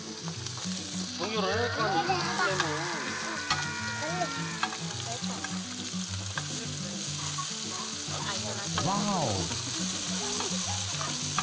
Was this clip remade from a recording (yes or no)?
no